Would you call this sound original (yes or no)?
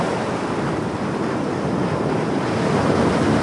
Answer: yes